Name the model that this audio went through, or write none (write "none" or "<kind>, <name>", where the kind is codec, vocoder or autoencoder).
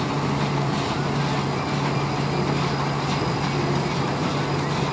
none